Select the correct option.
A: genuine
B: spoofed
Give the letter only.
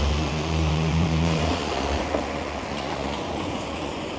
B